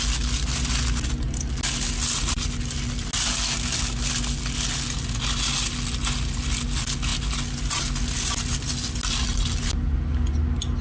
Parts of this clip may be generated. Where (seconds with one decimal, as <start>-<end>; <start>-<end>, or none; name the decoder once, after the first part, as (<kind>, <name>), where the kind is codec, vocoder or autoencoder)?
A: none